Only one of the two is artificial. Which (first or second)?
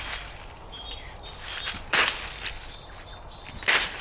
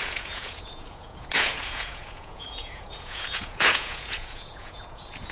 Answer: second